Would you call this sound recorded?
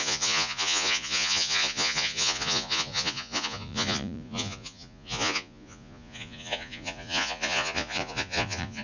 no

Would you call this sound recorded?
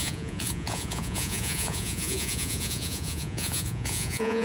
no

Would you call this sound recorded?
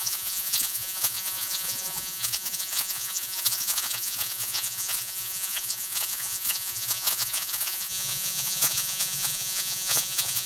no